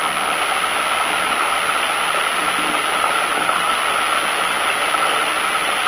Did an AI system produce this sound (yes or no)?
no